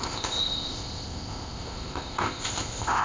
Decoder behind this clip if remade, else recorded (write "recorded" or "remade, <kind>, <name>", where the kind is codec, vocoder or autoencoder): remade, codec, ZipCodec